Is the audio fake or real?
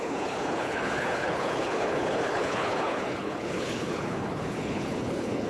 fake